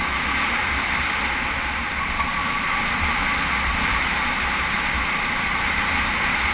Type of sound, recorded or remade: recorded